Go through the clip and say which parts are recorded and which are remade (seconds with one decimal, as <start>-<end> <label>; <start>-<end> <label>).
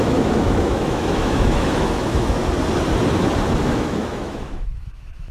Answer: 0.0-2.4 remade; 2.4-3.7 recorded; 3.7-5.3 remade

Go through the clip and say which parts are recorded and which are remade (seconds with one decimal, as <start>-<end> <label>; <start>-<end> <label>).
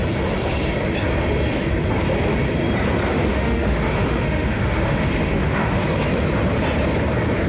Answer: 0.0-3.1 recorded; 3.1-5.8 remade; 5.8-7.5 recorded